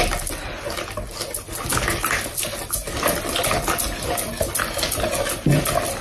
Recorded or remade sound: recorded